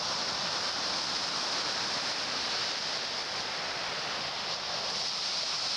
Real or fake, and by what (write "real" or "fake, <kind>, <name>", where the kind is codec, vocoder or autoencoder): real